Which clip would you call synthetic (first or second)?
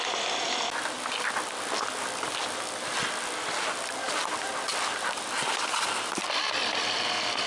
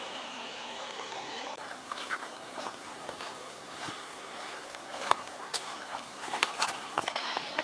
second